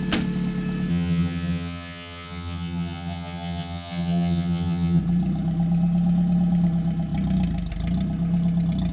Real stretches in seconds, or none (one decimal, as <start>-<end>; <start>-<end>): 0.0-0.9; 5.0-8.9